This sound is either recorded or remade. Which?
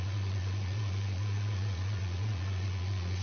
remade